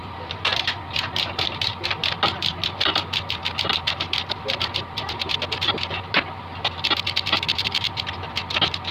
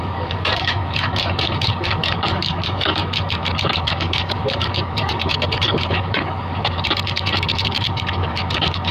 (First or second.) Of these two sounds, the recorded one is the first